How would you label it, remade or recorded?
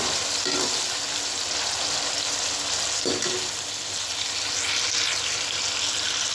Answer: recorded